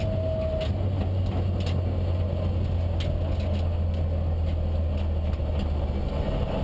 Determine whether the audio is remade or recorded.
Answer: recorded